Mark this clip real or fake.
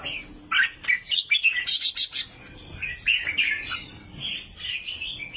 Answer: real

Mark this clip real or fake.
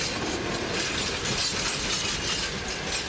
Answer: real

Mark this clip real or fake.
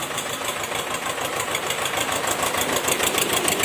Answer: fake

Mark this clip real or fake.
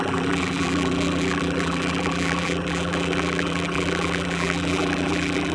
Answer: fake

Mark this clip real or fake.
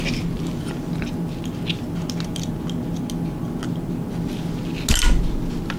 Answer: real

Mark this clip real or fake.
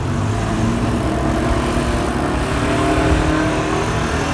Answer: real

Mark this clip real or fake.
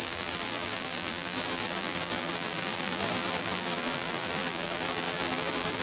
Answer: fake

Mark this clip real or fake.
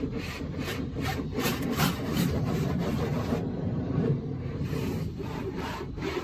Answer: fake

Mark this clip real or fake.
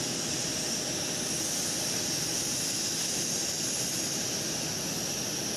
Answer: real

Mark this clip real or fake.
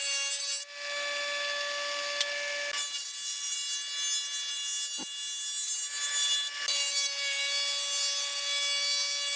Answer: real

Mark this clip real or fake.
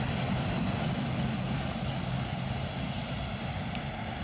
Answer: real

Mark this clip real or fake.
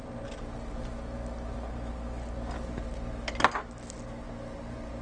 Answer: real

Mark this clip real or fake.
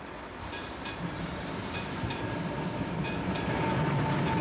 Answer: fake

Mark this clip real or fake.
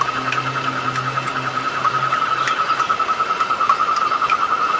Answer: real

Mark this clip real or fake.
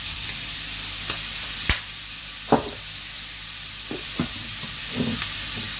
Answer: fake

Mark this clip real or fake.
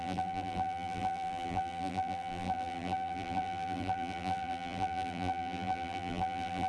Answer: fake